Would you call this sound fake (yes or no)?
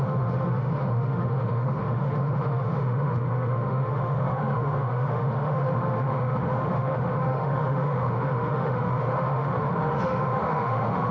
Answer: yes